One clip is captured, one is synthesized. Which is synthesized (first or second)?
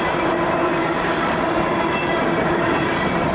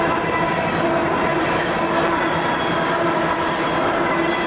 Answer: first